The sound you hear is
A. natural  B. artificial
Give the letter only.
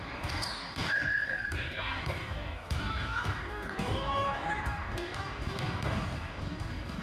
B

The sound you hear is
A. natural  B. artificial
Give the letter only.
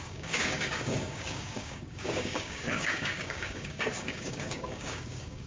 B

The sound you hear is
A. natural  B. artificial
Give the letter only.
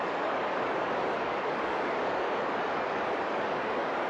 B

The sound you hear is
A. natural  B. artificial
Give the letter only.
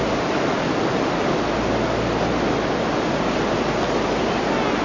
A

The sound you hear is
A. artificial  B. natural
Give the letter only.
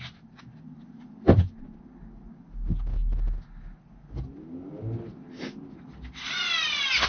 B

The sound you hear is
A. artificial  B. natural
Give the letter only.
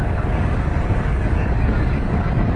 A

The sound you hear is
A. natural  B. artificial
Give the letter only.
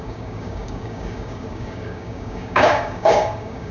B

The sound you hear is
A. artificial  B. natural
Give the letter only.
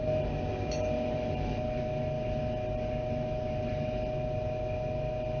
B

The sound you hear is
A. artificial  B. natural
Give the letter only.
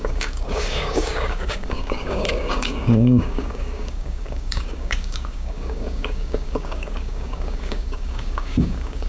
A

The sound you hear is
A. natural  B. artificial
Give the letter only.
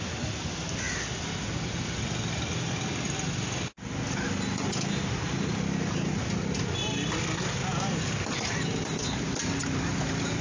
A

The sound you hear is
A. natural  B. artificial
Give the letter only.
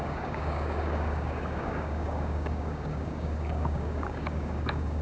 B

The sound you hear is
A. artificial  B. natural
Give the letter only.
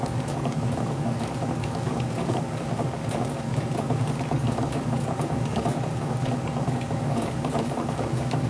A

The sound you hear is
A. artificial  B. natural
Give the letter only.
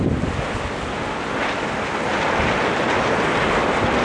B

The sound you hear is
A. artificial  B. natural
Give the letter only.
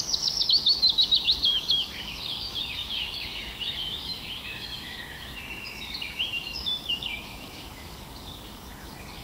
A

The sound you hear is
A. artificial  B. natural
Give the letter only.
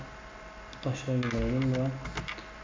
B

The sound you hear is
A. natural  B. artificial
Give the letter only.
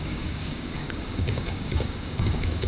B